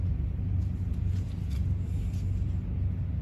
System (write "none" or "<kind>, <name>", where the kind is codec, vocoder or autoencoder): none